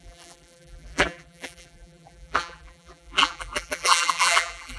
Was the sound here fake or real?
fake